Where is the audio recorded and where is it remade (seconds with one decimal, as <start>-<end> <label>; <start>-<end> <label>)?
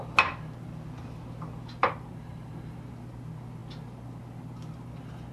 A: 0.0-1.8 recorded; 1.8-2.5 remade; 2.5-5.3 recorded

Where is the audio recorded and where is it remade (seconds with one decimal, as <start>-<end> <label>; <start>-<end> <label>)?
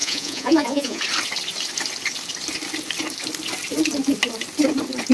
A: 0.0-1.0 remade; 1.0-5.1 recorded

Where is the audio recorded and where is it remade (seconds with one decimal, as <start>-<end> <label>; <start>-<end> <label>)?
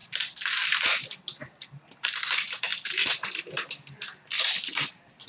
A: 0.0-1.6 recorded; 1.6-5.3 remade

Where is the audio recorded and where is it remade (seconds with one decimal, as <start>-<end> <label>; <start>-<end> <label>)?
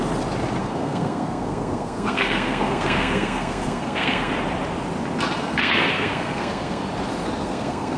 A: 0.0-0.6 recorded; 0.6-4.3 remade; 4.3-5.4 recorded; 5.4-6.8 remade; 6.8-7.4 recorded; 7.4-8.0 remade